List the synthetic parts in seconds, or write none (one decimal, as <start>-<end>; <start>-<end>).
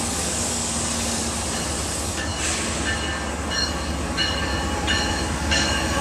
0.0-1.2; 1.9-2.3; 3.3-4.5; 5.1-6.0